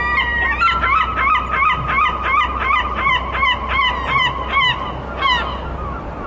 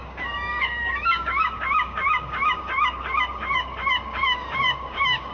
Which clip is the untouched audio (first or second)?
first